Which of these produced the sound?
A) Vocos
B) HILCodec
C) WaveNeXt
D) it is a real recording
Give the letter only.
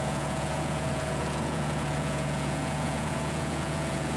A